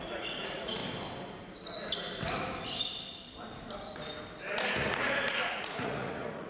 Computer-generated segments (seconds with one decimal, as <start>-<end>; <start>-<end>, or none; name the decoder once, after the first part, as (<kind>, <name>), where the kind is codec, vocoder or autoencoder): 0.0-0.8 (vocoder, Vocos); 4.7-6.5